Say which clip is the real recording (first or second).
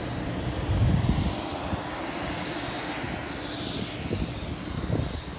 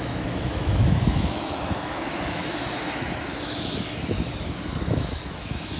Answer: first